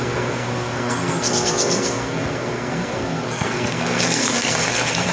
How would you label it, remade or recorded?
remade